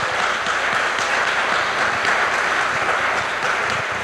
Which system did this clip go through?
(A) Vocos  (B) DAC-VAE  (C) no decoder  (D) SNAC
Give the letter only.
C